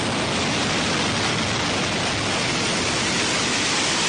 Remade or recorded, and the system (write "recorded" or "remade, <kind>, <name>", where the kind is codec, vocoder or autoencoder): recorded